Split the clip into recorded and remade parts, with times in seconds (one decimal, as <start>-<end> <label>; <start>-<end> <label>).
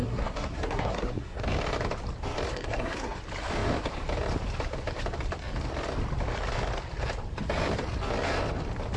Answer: 0.0-1.4 remade; 1.4-2.5 recorded; 2.5-3.2 remade; 3.2-9.0 recorded